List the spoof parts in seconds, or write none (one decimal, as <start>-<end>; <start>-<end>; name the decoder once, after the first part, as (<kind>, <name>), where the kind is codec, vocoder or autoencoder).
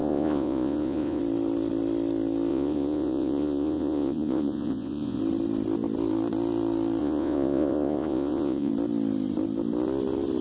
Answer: 0.0-1.2 (vocoder, Vocos); 2.5-5.2; 7.0-8.7